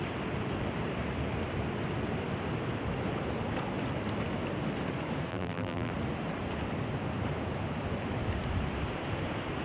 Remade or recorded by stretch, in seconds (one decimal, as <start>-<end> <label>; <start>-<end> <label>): 0.0-5.3 recorded; 5.3-5.9 remade; 5.9-9.6 recorded